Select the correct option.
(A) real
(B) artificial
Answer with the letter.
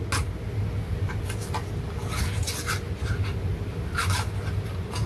A